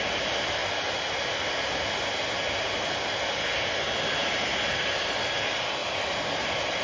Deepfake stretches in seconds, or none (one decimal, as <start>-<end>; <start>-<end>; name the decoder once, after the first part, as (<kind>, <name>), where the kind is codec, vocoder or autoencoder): 4.2-4.7 (vocoder, BigVGAN v2); 5.8-6.3